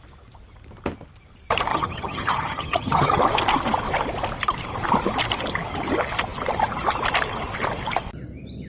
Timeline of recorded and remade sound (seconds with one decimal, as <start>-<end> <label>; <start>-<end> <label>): 0.0-1.7 recorded; 1.7-3.2 remade; 3.2-8.7 recorded